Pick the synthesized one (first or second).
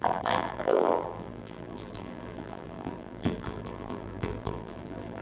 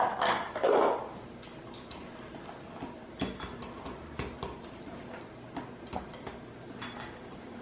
first